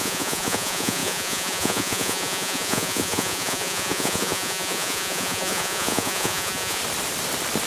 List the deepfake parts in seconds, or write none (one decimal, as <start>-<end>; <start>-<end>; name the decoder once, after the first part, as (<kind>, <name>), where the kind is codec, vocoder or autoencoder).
0.0-6.8 (vocoder, Vocos)